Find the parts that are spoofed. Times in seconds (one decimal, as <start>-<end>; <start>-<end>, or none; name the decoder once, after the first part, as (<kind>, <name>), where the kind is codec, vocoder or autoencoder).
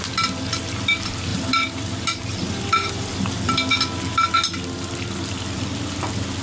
1.3-3.1 (vocoder, BigVGAN v2)